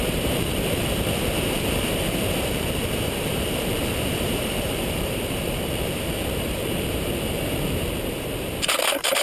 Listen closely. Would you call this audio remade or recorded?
remade